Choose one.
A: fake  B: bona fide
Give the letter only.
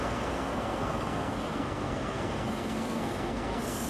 A